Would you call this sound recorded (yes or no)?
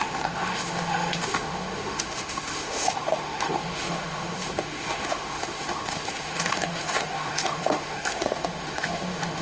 no